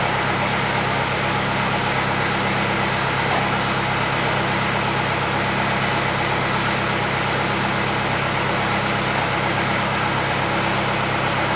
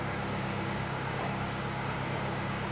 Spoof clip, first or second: second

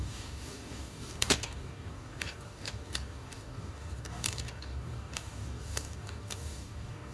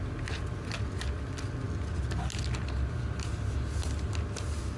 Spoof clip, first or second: first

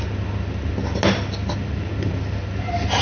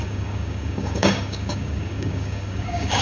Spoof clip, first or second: second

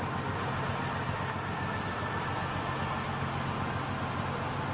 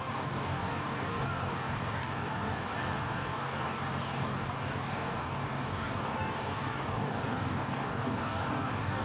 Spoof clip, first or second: second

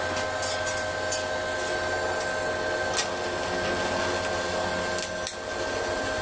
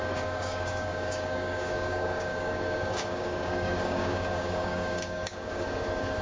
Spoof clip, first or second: second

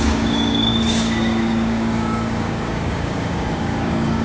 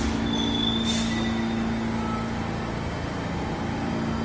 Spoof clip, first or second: first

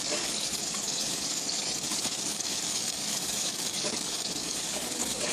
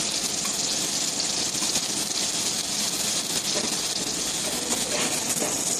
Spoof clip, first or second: first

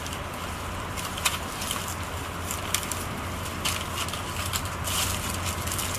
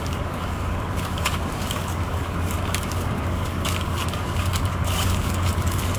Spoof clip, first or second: second